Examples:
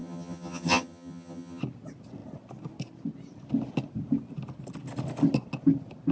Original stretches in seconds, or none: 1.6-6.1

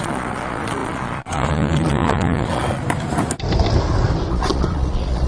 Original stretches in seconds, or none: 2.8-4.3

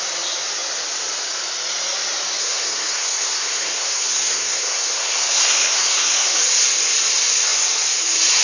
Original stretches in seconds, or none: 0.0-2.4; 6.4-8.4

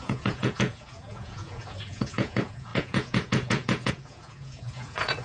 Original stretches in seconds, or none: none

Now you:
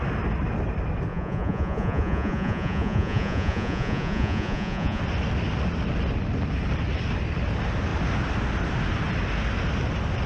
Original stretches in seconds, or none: 0.0-1.1; 5.0-10.3

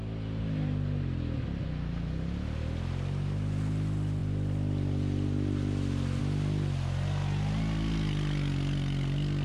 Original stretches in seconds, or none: 0.0-9.4